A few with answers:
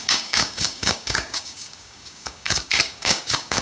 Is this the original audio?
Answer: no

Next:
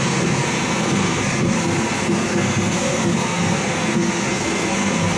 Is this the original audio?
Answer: no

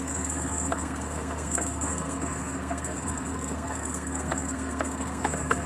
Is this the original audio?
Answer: no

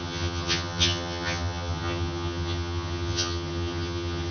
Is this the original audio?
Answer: no